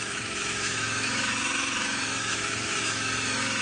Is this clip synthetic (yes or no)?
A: yes